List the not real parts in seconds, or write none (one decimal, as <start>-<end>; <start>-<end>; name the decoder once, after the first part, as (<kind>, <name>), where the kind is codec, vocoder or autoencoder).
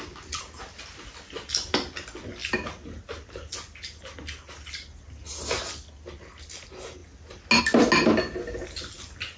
none